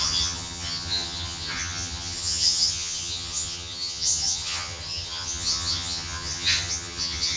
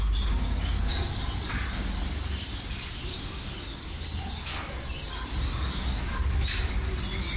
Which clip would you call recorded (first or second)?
second